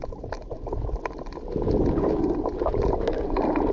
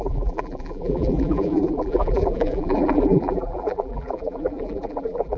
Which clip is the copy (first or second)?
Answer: second